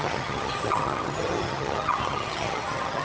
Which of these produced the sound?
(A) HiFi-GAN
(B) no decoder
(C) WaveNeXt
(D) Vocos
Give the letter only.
A